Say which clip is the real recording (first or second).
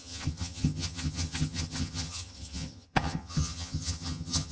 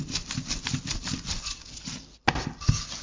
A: second